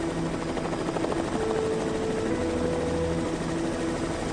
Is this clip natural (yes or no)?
yes